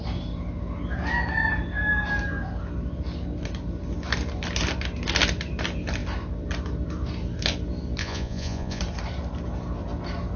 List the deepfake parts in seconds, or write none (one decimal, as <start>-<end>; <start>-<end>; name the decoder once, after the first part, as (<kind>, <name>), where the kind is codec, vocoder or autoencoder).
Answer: 8.0-8.8 (vocoder, Vocos)